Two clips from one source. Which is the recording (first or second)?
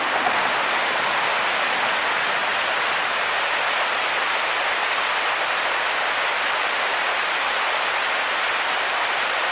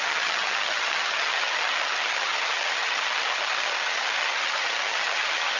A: first